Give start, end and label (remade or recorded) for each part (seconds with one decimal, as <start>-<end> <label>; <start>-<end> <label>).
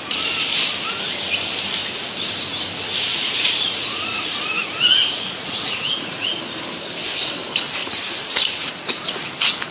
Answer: 0.0-1.8 recorded; 1.8-2.4 remade; 2.4-3.1 recorded; 3.1-6.4 remade; 6.4-7.8 recorded; 7.8-8.9 remade; 8.9-9.7 recorded